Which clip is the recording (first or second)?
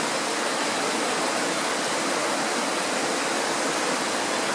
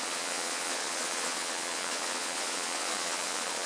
first